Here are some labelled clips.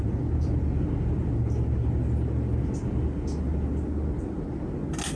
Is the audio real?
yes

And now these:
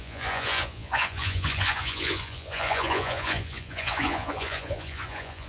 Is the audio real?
no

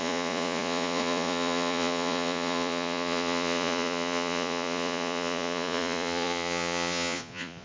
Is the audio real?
no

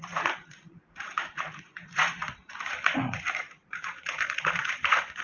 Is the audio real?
no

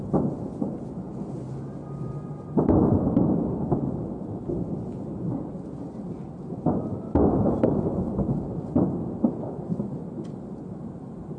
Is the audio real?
yes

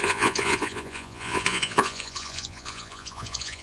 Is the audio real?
no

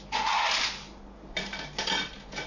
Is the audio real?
yes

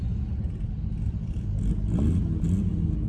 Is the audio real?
yes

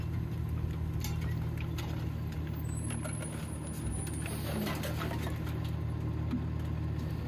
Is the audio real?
yes